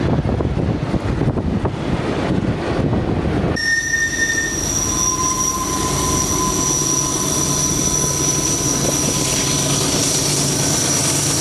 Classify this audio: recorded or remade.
recorded